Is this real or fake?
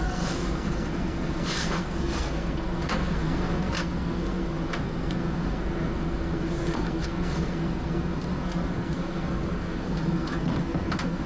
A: fake